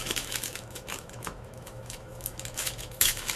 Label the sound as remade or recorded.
remade